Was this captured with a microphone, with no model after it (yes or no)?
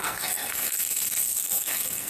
no